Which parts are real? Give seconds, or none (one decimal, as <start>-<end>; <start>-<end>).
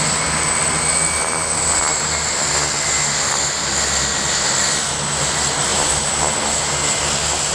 0.0-7.5